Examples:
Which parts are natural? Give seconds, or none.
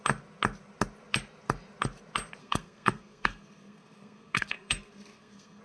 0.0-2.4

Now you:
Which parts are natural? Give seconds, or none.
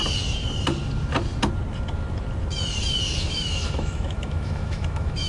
0.0-3.2